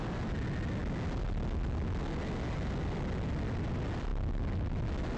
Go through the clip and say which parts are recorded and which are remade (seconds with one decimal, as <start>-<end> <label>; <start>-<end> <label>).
0.0-5.2 recorded